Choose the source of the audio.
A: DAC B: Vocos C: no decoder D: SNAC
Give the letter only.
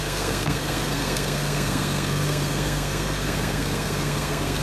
D